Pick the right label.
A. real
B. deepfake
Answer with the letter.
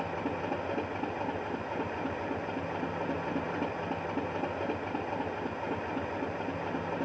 A